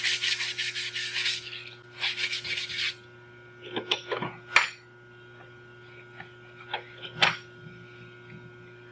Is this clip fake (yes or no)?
no